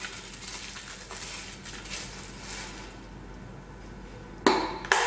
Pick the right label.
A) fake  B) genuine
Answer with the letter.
B